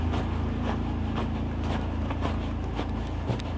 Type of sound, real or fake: real